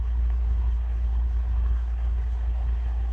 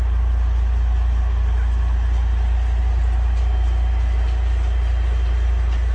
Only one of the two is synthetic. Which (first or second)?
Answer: first